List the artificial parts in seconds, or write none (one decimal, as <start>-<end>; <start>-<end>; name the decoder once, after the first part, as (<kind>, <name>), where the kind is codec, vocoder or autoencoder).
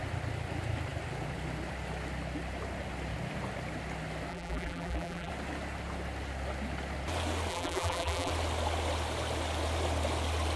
4.3-5.3 (vocoder, BigVGAN v2); 7.5-8.3